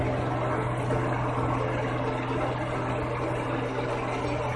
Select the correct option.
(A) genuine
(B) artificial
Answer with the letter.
A